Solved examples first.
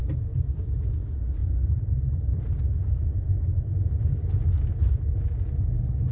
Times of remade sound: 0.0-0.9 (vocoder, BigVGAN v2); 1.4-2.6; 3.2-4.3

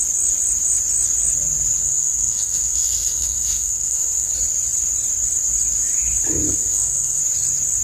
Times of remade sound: 1.8-4.3 (codec, SNAC); 6.6-7.2

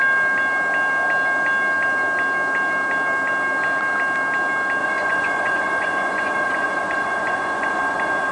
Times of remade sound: 4.8-8.3 (vocoder, Vocos)

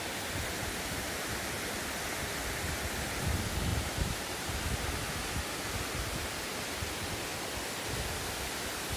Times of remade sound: 3.7-4.9 (vocoder, BigVGAN v2)

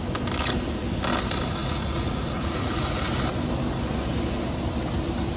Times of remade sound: 1.6-3.0 (vocoder, Vocos)

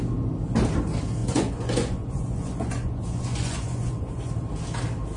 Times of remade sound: 1.2-4.3 (vocoder, Vocos)